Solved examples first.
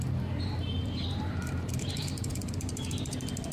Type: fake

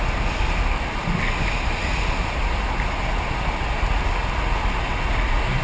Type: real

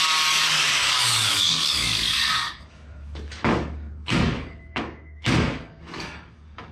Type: fake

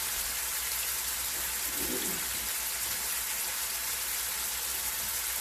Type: fake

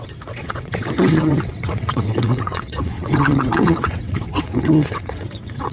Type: fake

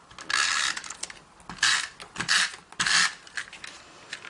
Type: real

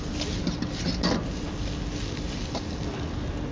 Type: real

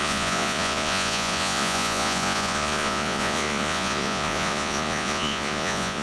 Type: fake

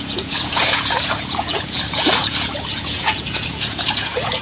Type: fake